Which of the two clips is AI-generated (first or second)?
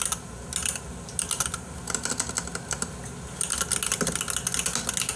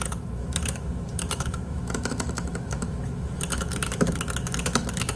second